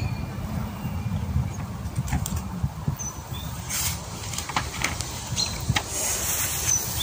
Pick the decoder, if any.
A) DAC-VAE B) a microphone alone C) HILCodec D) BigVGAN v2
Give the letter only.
B